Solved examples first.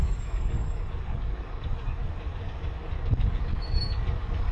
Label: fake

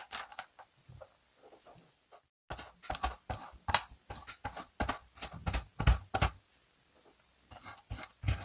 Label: real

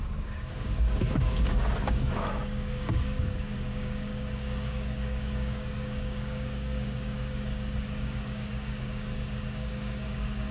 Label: fake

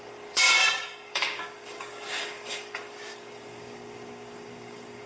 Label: fake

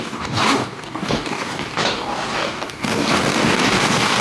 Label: fake